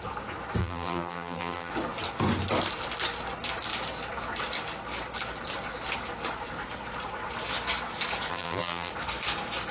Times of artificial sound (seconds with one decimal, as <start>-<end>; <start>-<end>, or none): 0.6-1.7; 8.3-8.9